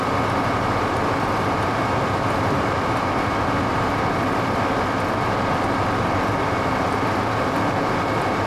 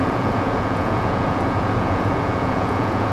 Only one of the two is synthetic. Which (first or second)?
second